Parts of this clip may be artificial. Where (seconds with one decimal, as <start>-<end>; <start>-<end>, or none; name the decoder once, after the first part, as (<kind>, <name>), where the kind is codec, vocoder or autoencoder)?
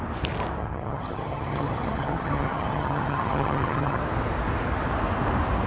0.6-4.0 (vocoder, HiFi-GAN)